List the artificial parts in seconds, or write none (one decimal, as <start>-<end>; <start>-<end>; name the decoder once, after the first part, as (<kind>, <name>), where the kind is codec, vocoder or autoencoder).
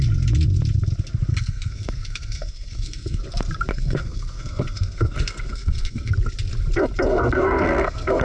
1.3-3.2 (codec, SNAC); 3.7-6.1; 7.1-8.2